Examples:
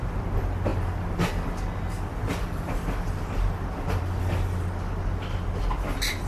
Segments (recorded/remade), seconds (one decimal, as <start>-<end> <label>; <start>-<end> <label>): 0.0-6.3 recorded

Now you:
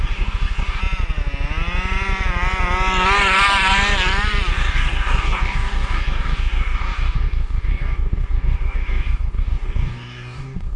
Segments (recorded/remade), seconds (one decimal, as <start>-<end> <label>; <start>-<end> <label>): 0.0-0.8 remade; 0.8-4.5 recorded; 4.5-10.8 remade

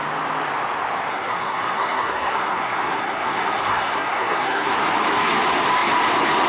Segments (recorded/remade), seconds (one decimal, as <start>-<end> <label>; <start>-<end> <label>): 0.0-1.1 recorded; 1.1-4.7 remade; 4.7-6.5 recorded

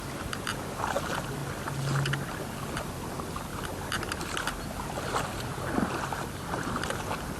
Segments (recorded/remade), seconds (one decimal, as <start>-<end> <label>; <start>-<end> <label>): 0.0-7.4 recorded